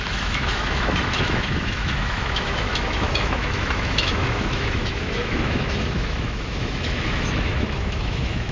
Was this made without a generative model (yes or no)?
no